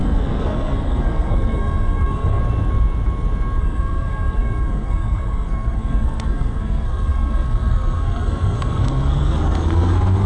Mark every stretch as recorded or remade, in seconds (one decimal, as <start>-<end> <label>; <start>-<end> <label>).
0.0-2.4 remade; 2.4-3.6 recorded; 3.6-10.3 remade